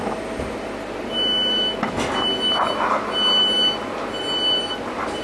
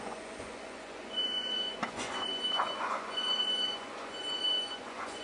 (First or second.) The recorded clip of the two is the first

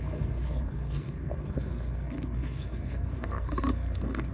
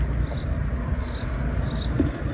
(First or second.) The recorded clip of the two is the second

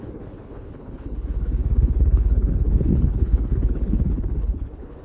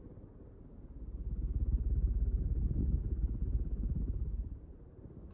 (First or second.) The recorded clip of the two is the second